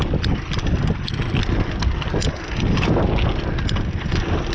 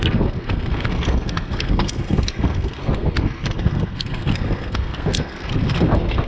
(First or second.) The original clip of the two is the first